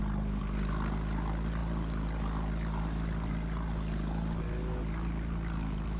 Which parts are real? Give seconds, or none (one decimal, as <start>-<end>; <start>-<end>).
0.0-6.0